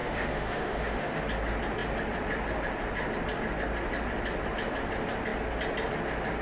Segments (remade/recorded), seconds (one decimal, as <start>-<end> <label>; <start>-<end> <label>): 0.0-1.2 remade; 1.2-6.4 recorded